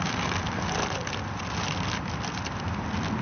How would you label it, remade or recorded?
recorded